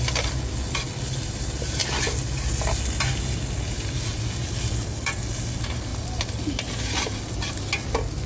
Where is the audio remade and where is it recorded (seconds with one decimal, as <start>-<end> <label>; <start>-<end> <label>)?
0.0-8.3 recorded